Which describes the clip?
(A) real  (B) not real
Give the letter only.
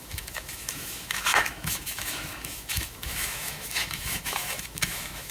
B